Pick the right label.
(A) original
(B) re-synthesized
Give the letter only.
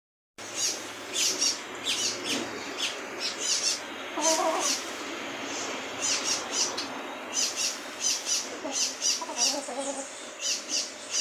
A